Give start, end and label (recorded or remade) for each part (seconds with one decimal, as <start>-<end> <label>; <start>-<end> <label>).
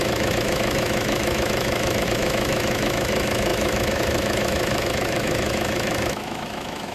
0.0-6.9 remade